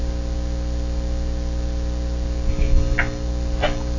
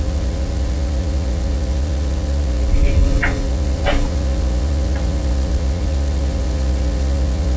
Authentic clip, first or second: first